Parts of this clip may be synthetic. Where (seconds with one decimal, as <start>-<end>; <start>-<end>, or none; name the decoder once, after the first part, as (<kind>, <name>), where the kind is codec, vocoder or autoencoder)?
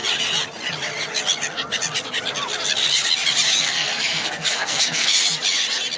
3.6-5.1 (codec, SNAC)